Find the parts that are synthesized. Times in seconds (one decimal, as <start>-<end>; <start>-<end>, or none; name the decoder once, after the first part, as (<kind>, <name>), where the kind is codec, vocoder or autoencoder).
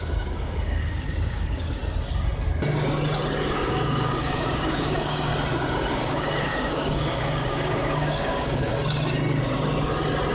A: 0.0-1.8 (codec, DAC); 3.5-5.3; 5.9-8.7